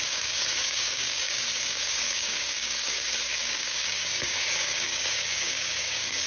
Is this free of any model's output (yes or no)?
no